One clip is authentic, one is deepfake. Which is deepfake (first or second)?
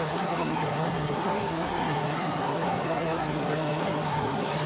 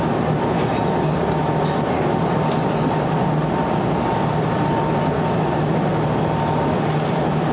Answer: first